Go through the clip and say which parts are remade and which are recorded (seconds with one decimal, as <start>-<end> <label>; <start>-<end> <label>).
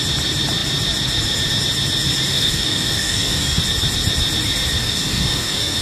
0.0-2.3 recorded; 2.3-3.6 remade; 3.6-4.8 recorded; 4.8-5.8 remade